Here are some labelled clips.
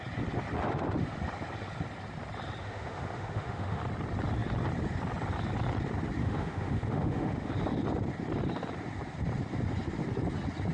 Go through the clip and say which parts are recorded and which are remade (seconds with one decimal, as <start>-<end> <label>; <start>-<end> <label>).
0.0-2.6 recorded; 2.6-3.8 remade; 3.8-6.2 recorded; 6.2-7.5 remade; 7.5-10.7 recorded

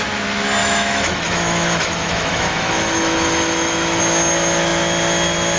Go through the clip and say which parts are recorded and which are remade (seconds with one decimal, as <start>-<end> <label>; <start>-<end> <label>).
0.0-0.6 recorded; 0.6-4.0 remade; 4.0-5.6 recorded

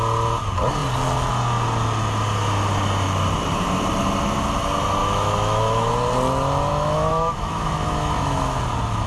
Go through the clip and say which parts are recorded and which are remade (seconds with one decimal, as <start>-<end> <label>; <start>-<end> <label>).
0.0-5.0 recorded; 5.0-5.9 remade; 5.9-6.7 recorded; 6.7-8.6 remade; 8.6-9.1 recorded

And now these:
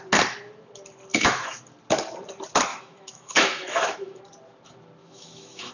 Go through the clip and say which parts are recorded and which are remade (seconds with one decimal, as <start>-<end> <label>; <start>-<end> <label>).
0.0-1.1 recorded; 1.1-1.6 remade; 1.6-2.7 recorded; 2.7-4.2 remade; 4.2-5.0 recorded; 5.0-5.7 remade

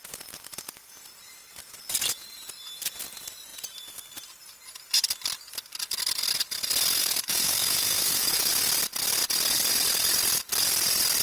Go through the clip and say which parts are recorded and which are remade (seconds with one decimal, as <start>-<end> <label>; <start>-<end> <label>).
0.0-7.0 recorded; 7.0-8.5 remade; 8.5-11.2 recorded

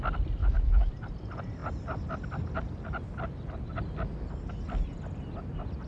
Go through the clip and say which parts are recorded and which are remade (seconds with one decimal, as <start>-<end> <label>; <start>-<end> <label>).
0.0-0.4 recorded; 0.4-0.9 remade; 0.9-5.9 recorded